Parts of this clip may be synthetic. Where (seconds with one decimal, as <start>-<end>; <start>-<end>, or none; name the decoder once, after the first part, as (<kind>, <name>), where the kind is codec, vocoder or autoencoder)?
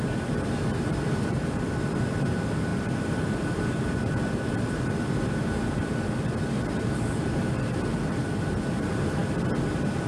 none